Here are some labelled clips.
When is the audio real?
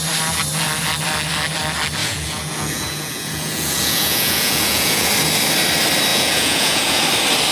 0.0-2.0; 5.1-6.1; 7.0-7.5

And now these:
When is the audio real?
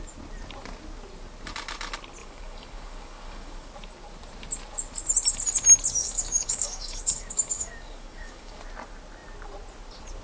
0.0-2.2; 3.7-6.0; 8.6-10.2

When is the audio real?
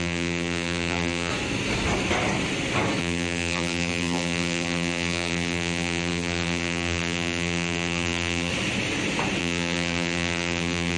1.3-3.0; 8.5-9.4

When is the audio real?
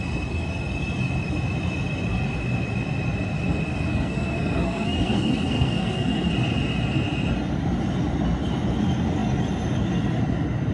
0.0-3.9; 6.3-10.7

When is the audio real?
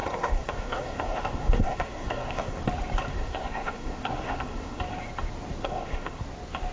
2.6-3.1; 4.8-5.6; 6.2-6.7